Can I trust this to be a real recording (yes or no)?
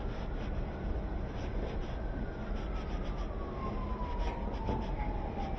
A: yes